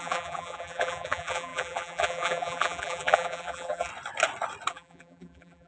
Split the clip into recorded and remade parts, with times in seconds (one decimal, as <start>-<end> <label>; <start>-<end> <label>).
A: 0.0-3.9 remade; 3.9-4.7 recorded; 4.7-5.7 remade